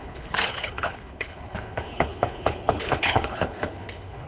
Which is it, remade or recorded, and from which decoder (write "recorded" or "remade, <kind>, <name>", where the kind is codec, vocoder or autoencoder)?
remade, codec, HILCodec